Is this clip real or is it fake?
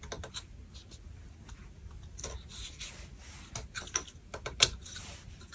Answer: real